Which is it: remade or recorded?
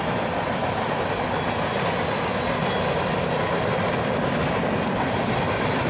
recorded